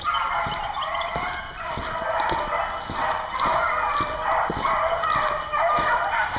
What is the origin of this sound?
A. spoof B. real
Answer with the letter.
B